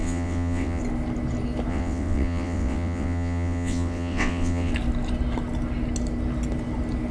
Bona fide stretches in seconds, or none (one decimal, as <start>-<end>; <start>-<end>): 0.8-1.7; 4.7-7.1